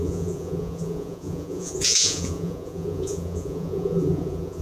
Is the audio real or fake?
fake